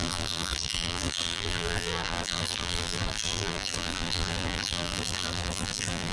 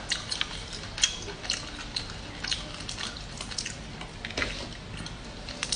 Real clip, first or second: second